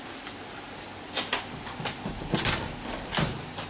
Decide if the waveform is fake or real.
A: real